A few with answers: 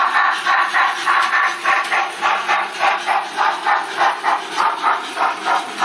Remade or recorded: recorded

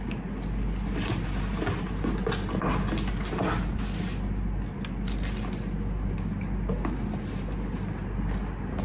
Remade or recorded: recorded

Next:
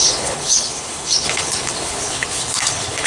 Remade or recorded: remade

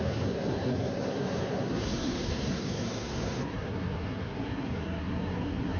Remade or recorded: remade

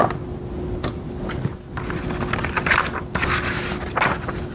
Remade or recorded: recorded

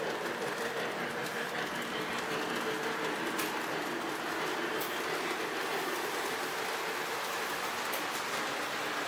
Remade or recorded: recorded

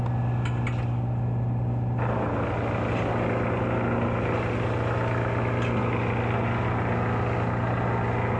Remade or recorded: recorded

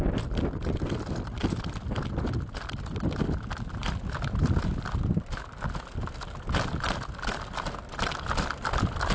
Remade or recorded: recorded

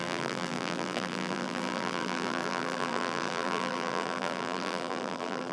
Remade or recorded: remade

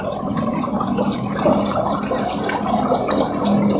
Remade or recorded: recorded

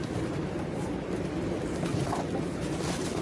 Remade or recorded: recorded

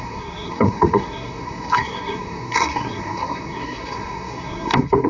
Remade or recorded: remade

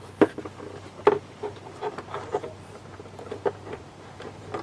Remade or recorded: recorded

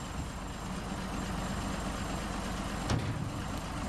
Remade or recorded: recorded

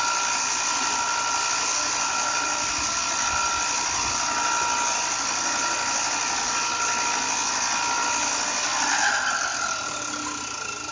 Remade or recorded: recorded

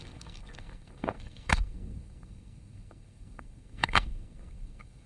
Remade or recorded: remade